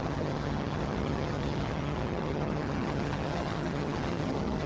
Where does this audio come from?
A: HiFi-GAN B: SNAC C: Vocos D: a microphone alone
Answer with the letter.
A